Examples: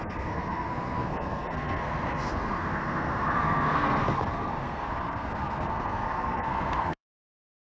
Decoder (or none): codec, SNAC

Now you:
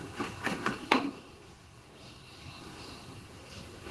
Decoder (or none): codec, SNAC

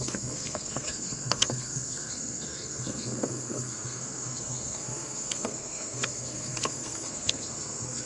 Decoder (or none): codec, SNAC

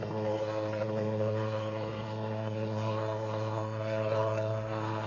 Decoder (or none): codec, SNAC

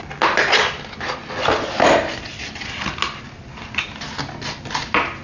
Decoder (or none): none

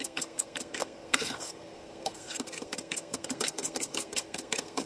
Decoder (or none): codec, SNAC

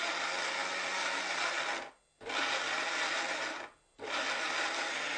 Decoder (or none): none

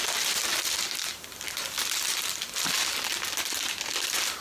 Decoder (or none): none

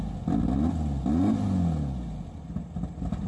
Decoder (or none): none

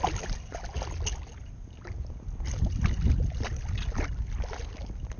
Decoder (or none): none